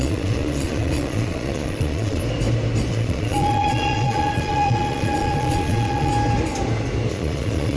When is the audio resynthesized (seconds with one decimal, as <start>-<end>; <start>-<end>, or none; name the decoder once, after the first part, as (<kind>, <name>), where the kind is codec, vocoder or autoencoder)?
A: 0.0-2.2 (vocoder, Vocos); 2.9-6.1; 7.1-7.8